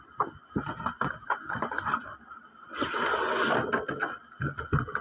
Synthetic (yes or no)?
no